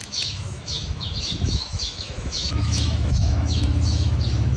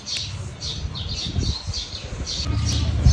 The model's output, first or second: first